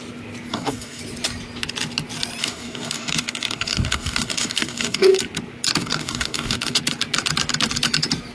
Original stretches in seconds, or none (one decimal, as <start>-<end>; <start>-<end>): 0.0-0.5; 1.0-2.4; 5.2-5.8; 6.8-8.3